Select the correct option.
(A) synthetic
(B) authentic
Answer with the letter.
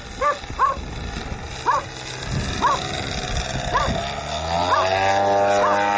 B